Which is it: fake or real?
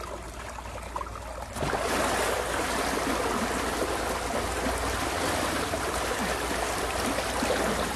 real